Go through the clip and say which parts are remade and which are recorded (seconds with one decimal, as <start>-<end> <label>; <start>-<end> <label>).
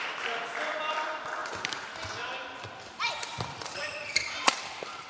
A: 0.0-1.4 recorded; 1.4-4.3 remade; 4.3-5.1 recorded